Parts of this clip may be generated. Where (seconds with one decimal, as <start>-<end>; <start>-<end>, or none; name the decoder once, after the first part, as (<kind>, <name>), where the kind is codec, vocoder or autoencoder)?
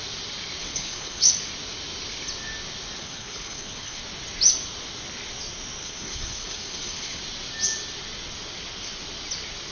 0.6-1.3 (codec, HILCodec); 3.0-4.0; 5.8-7.2